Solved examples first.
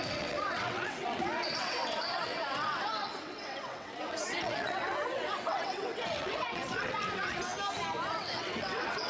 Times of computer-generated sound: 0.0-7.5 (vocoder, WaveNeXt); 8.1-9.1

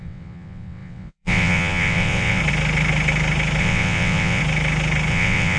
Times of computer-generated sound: 0.0-2.4 (vocoder, WaveNeXt); 3.6-4.4; 5.1-5.6